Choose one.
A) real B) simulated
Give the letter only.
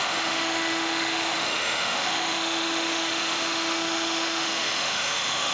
B